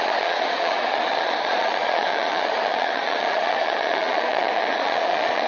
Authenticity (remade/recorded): remade